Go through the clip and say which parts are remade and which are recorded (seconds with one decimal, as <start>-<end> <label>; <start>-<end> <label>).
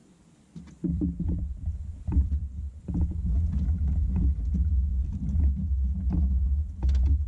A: 0.0-2.7 remade; 2.7-4.9 recorded; 4.9-5.4 remade; 5.4-7.3 recorded